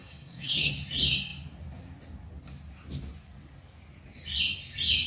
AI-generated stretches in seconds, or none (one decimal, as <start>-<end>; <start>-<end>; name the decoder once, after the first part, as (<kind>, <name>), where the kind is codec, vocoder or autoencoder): 0.0-0.7 (codec, SNAC)